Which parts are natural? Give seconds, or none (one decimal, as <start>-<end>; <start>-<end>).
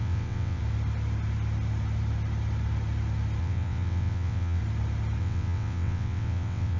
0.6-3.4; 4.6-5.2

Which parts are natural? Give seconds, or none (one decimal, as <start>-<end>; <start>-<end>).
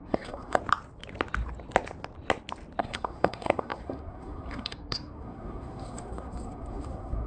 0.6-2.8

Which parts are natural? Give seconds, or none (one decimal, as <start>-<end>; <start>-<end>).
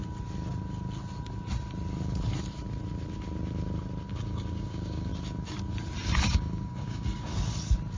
0.0-4.1; 5.1-6.3; 7.3-8.0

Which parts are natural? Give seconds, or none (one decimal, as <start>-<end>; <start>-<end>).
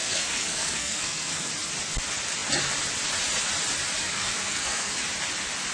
1.5-4.0; 5.0-5.7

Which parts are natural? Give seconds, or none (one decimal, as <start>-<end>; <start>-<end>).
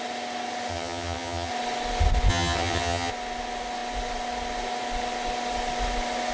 0.0-0.7; 1.5-2.3; 3.1-6.3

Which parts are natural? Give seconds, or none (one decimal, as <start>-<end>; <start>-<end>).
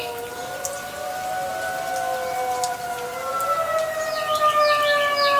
0.0-5.4